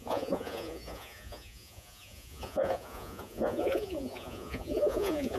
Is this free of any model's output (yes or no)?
no